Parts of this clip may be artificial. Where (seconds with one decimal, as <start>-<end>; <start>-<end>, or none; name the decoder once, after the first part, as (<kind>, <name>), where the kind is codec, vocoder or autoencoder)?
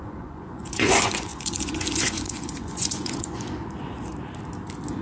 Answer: 0.0-4.1 (vocoder, Vocos)